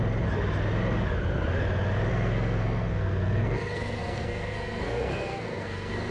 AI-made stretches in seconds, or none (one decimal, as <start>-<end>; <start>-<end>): 2.1-6.1